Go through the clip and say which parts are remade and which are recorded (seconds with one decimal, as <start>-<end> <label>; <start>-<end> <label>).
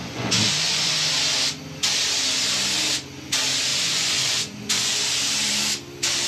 0.0-0.9 remade; 0.9-3.7 recorded; 3.7-5.0 remade; 5.0-6.3 recorded